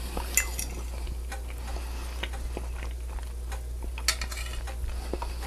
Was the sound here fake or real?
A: real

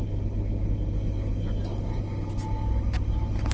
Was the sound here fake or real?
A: real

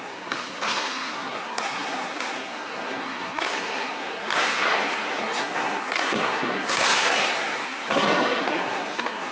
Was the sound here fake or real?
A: fake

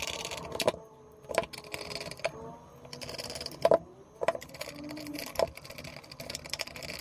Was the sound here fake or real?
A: real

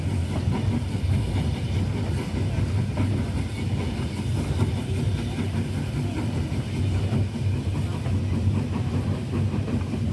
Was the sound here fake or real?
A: real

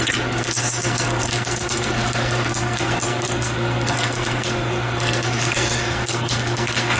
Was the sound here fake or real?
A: fake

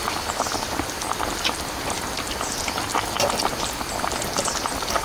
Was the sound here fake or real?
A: real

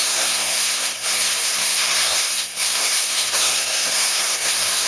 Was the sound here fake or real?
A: fake